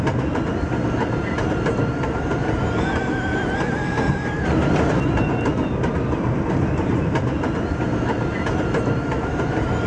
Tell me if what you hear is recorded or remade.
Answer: recorded